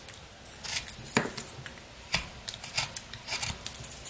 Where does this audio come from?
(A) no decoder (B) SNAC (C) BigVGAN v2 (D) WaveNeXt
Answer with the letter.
A